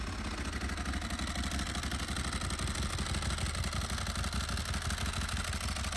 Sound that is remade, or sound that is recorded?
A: recorded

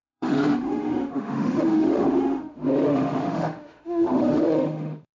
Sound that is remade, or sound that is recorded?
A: remade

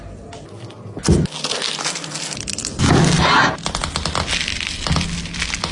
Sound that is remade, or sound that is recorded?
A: recorded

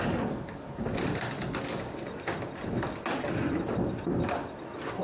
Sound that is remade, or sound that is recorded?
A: recorded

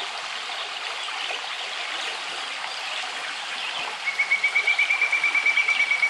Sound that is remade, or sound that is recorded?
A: recorded